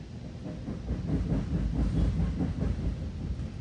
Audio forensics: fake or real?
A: real